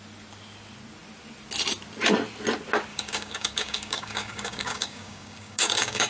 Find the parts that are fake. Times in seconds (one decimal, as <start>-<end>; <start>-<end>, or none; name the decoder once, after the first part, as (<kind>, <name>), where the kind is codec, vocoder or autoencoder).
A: 2.9-6.1 (codec, DAC)